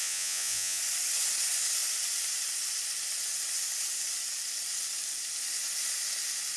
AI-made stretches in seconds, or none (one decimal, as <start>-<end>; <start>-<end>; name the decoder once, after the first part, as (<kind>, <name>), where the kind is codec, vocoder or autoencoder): 0.0-0.8 (vocoder, Vocos)